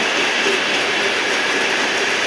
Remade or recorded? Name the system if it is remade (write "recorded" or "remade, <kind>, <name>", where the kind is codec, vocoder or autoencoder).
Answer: remade, vocoder, BigVGAN v2